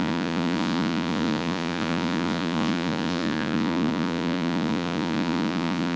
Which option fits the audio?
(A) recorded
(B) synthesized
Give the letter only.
B